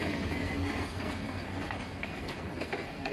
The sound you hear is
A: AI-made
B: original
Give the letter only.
A